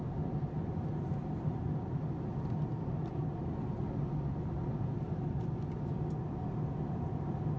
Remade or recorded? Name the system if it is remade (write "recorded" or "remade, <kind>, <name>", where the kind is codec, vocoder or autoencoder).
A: recorded